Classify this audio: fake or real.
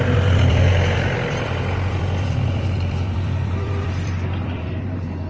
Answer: fake